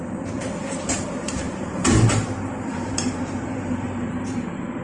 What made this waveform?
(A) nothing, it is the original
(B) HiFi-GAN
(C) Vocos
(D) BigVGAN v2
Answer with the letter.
D